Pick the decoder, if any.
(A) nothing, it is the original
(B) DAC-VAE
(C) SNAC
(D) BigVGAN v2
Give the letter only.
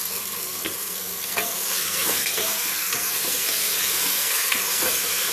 C